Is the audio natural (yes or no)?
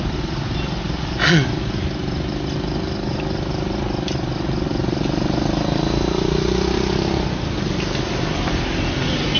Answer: yes